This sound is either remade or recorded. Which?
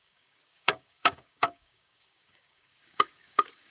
remade